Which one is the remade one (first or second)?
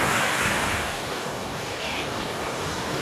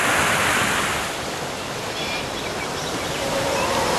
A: first